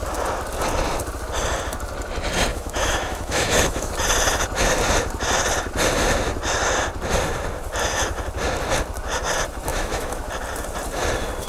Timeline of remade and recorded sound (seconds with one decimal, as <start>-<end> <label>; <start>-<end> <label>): 0.0-2.5 recorded; 2.5-3.9 remade; 3.9-9.7 recorded; 9.7-10.3 remade; 10.3-11.5 recorded